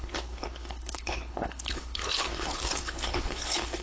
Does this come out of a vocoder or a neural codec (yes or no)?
yes